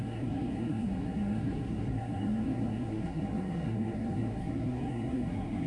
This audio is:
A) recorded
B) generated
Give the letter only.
B